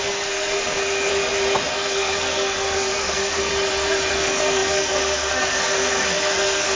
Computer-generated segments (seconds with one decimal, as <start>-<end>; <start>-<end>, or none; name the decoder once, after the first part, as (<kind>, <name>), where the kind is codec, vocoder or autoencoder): 0.0-1.1 (codec, SNAC); 1.7-3.5; 4.1-6.8